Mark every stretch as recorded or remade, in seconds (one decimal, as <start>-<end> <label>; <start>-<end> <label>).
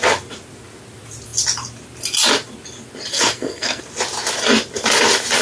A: 0.0-3.1 recorded; 3.1-3.8 remade; 3.8-5.4 recorded